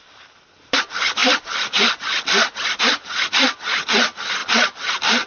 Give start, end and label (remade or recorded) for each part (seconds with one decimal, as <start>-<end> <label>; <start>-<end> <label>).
0.0-5.3 recorded